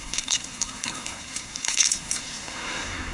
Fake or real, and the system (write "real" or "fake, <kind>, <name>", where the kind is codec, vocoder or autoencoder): fake, codec, SNAC